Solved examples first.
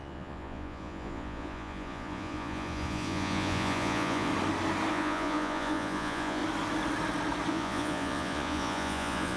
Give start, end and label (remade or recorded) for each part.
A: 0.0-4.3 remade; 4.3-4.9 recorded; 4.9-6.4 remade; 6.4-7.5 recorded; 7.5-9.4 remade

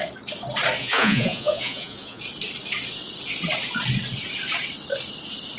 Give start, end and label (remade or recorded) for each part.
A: 0.0-0.8 recorded; 0.8-2.2 remade; 2.2-5.6 recorded